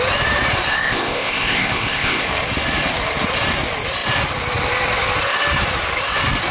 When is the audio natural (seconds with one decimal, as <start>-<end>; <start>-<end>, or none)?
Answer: 0.0-0.7; 2.3-6.5